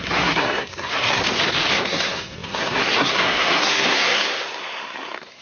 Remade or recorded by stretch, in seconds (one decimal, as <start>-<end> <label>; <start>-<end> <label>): 0.0-1.2 remade; 1.2-1.7 recorded; 1.7-5.4 remade